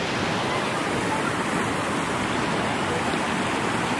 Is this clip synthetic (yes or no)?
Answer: no